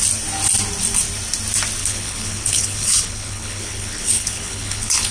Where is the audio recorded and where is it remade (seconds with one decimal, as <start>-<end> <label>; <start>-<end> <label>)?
0.0-1.8 recorded; 1.8-5.1 remade